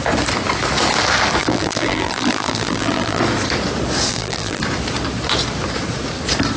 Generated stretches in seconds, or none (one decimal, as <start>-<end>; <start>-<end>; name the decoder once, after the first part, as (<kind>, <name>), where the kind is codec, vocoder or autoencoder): 1.4-3.2 (vocoder, BigVGAN v2); 4.1-4.6